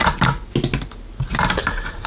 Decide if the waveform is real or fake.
real